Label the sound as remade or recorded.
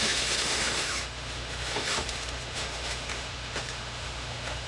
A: remade